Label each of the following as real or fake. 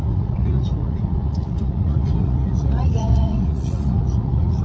fake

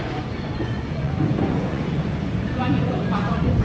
fake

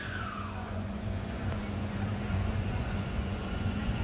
fake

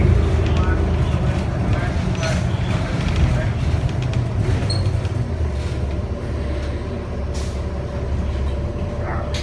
real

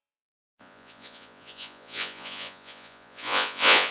fake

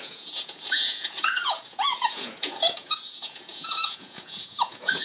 fake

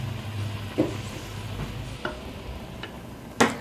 real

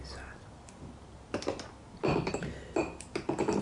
real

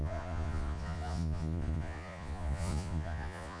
fake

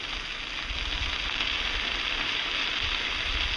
real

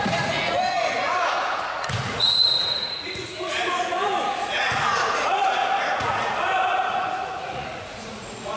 fake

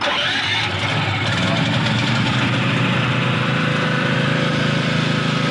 real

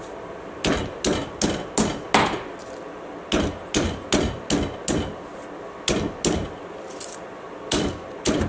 real